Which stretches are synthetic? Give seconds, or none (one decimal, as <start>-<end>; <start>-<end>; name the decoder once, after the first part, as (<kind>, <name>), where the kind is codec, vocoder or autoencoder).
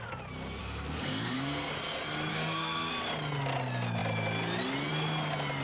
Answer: 0.6-1.7 (codec, SNAC); 2.3-2.9